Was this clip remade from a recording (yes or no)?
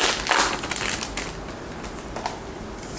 no